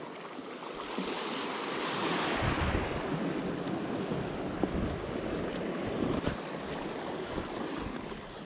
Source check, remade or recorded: recorded